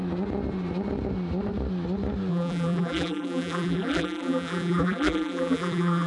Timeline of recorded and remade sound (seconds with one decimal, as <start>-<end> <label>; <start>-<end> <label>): 0.0-2.3 recorded; 2.3-6.1 remade